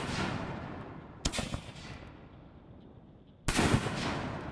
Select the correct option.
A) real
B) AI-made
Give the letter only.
A